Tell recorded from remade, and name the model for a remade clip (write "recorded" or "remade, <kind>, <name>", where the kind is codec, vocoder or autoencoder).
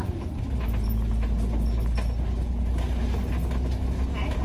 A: recorded